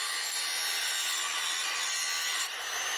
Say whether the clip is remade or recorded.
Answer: recorded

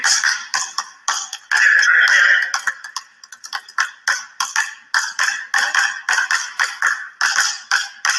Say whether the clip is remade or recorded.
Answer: recorded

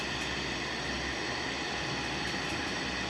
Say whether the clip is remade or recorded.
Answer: recorded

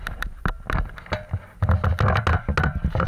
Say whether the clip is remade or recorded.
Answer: recorded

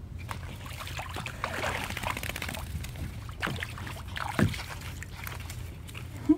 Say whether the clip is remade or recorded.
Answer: recorded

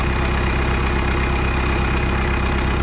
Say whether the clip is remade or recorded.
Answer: recorded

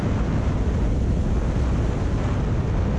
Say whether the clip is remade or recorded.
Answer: recorded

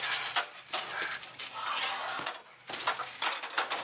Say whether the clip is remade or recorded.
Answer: recorded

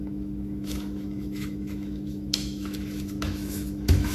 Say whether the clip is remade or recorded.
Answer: remade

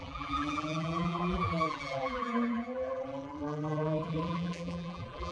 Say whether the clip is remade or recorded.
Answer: remade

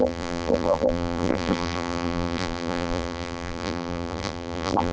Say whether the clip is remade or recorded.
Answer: remade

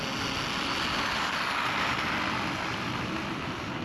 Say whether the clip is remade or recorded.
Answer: recorded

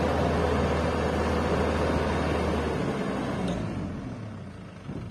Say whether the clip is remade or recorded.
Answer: recorded